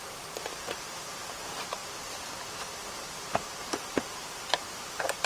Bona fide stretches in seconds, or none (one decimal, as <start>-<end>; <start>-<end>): 1.8-3.3